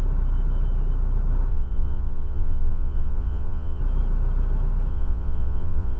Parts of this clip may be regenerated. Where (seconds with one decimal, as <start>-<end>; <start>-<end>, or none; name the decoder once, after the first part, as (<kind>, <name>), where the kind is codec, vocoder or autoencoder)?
1.5-3.8 (vocoder, Vocos); 4.9-6.0